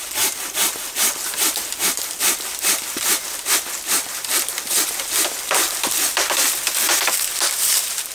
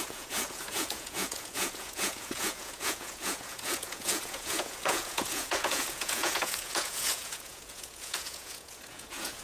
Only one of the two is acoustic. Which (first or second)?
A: first